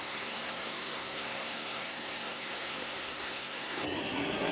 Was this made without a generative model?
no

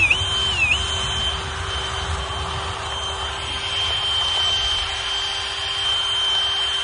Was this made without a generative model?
yes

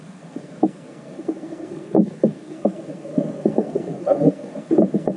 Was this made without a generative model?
no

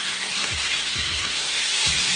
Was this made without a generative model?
no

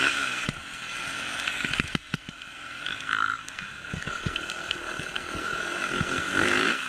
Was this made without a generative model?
no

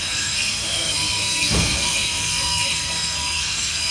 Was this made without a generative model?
no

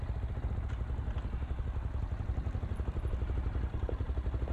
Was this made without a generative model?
yes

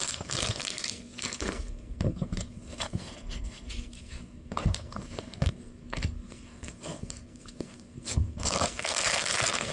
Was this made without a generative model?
no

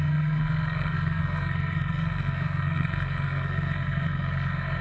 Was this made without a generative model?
no